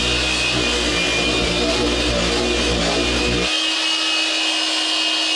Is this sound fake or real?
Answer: real